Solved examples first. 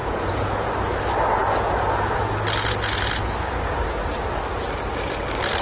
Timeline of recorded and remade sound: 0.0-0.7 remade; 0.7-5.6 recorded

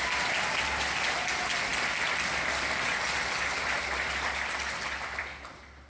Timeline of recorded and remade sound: 0.0-5.9 recorded

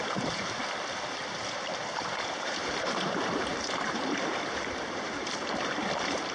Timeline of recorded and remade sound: 0.0-0.6 remade; 0.6-1.2 recorded; 1.2-6.3 remade

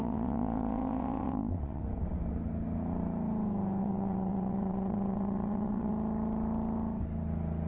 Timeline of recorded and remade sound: 0.0-1.8 remade; 1.8-3.8 recorded; 3.8-5.9 remade; 5.9-7.7 recorded

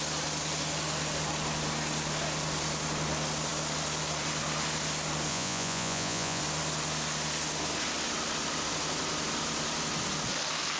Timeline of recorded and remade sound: 0.0-5.3 recorded; 5.3-6.4 remade; 6.4-10.8 recorded

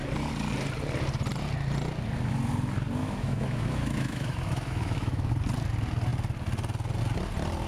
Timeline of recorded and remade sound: 0.0-3.0 recorded; 3.0-5.3 remade; 5.3-7.7 recorded

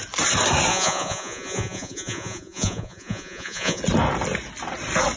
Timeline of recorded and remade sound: 0.0-0.7 recorded; 0.7-3.8 remade; 3.8-5.2 recorded

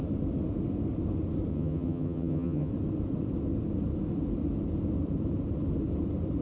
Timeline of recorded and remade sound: 0.0-1.5 recorded; 1.5-2.7 remade; 2.7-6.4 recorded